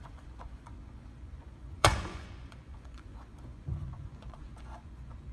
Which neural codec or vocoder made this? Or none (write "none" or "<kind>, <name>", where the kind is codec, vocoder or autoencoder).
vocoder, Vocos